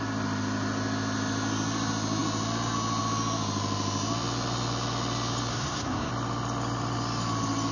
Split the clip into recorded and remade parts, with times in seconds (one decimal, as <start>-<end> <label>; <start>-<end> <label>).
0.0-5.5 recorded; 5.5-6.1 remade; 6.1-7.7 recorded